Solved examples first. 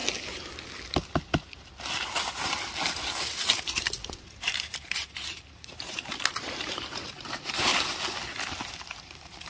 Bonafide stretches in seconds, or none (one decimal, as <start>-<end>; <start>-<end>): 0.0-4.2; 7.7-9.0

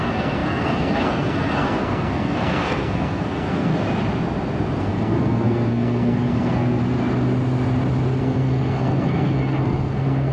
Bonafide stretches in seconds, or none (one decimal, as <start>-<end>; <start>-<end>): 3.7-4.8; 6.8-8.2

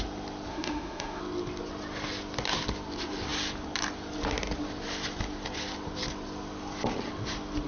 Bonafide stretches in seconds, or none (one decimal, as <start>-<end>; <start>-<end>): 0.0-0.5; 1.2-7.7

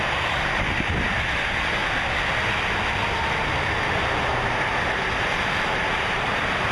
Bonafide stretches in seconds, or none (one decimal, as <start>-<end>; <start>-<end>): 1.8-4.3